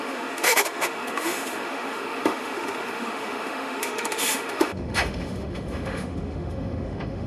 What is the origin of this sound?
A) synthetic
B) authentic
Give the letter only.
A